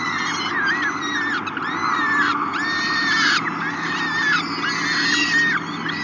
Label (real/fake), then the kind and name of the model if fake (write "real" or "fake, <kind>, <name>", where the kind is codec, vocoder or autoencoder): real